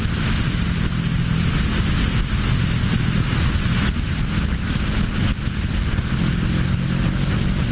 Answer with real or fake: real